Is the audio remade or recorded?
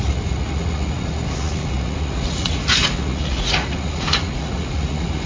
remade